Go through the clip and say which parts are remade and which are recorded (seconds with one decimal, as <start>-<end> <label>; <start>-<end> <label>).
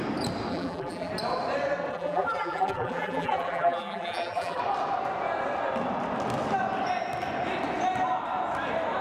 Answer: 0.0-0.5 recorded; 0.5-1.1 remade; 1.1-1.9 recorded; 1.9-4.6 remade; 4.6-9.0 recorded